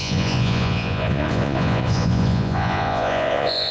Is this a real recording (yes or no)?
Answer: no